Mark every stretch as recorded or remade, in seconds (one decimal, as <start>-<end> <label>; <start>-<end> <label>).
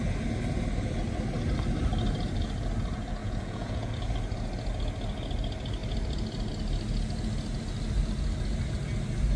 0.0-3.2 recorded; 3.2-3.9 remade; 3.9-9.4 recorded